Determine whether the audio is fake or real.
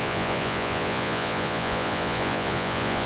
fake